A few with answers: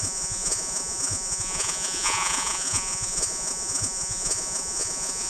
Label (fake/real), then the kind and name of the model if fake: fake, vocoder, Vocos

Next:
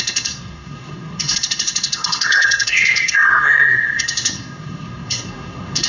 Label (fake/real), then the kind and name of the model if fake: fake, codec, SNAC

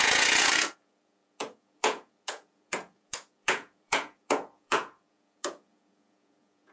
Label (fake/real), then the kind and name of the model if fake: fake, vocoder, Vocos